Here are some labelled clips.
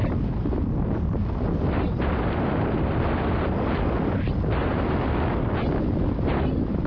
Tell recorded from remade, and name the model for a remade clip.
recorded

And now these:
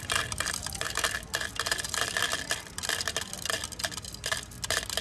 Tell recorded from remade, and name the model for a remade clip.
remade, vocoder, BigVGAN v2